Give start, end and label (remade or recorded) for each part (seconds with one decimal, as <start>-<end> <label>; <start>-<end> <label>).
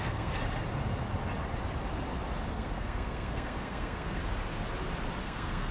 0.0-0.4 remade; 0.4-2.5 recorded; 2.5-4.2 remade; 4.2-5.2 recorded; 5.2-5.7 remade